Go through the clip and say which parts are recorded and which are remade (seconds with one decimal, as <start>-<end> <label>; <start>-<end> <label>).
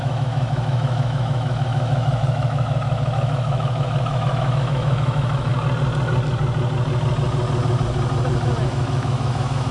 0.0-5.5 remade; 5.5-8.6 recorded; 8.6-9.7 remade